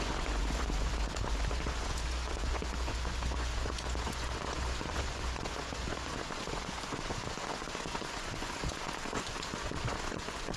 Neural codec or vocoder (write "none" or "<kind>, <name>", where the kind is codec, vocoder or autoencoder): vocoder, Vocos